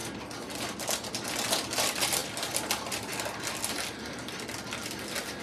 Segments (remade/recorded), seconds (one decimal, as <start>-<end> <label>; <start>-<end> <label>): 0.0-5.4 recorded